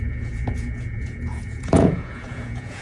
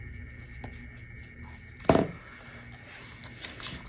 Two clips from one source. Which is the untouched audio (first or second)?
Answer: second